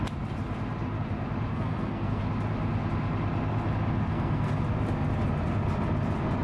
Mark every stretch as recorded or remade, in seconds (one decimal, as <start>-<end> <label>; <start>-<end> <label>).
0.0-1.5 recorded; 1.5-2.2 remade; 2.2-4.1 recorded; 4.1-4.6 remade; 4.6-6.4 recorded

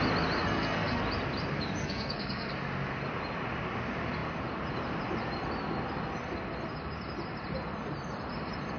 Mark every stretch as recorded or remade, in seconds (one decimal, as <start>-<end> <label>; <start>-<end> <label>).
0.0-0.4 recorded; 0.4-1.0 remade; 1.0-1.8 recorded; 1.8-2.5 remade; 2.5-8.8 recorded

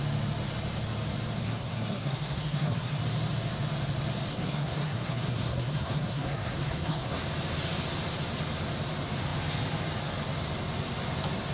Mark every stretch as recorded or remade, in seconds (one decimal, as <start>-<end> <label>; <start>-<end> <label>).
0.0-1.4 recorded; 1.4-3.0 remade; 3.0-4.3 recorded; 4.3-7.2 remade; 7.2-11.5 recorded

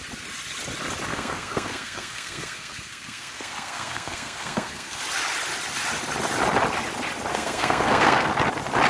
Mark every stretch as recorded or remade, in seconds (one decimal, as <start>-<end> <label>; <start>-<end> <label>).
0.0-1.1 recorded; 1.1-5.0 remade; 5.0-7.3 recorded; 7.3-8.3 remade; 8.3-8.9 recorded